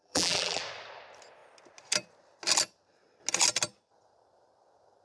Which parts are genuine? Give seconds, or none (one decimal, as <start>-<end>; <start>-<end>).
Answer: 0.6-5.0